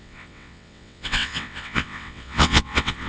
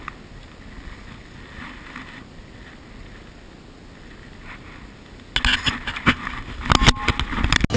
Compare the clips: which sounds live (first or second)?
second